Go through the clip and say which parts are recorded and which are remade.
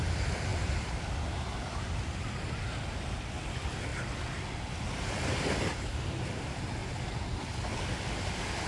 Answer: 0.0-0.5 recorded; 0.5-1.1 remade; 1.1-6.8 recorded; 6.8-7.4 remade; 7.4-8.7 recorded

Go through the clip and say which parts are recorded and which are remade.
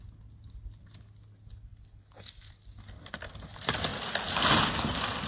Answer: 0.0-5.3 recorded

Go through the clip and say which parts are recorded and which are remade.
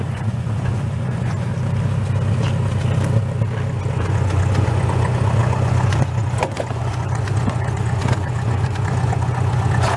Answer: 0.0-1.5 remade; 1.5-3.9 recorded; 3.9-10.0 remade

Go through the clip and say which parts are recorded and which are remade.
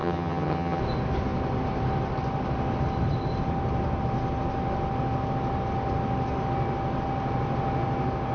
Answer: 0.0-0.8 remade; 0.8-8.3 recorded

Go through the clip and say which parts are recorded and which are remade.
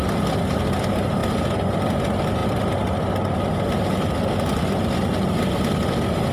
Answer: 0.0-6.3 recorded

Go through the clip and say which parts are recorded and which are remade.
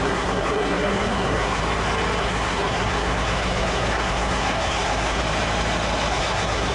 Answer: 0.0-1.6 remade; 1.6-2.2 recorded; 2.2-5.2 remade; 5.2-6.1 recorded; 6.1-6.7 remade